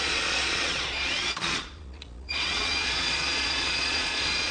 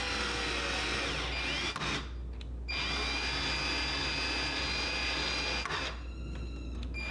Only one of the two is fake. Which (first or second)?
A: first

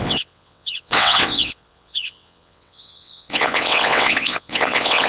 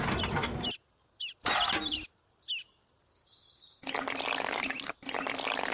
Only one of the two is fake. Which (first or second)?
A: first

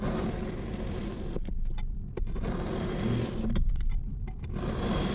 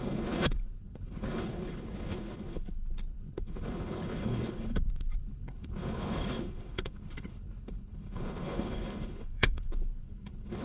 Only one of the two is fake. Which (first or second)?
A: second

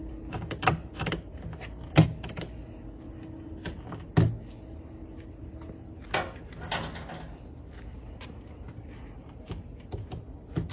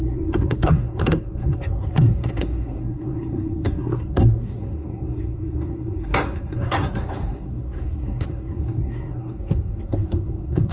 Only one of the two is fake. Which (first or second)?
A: second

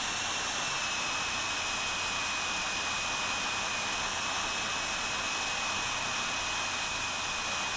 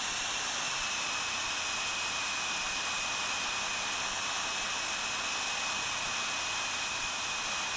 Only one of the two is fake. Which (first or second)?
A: second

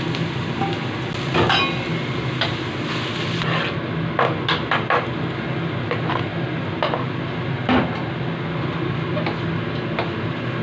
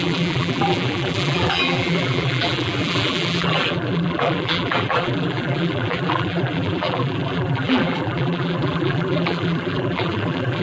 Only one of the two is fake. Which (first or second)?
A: second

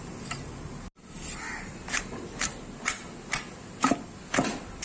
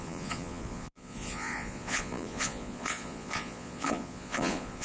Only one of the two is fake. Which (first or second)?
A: second